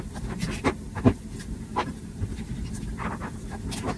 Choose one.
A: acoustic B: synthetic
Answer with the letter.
B